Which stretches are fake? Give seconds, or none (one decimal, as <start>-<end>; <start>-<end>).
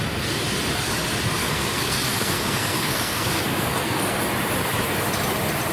1.4-4.2